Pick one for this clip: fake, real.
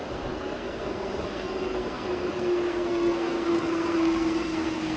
fake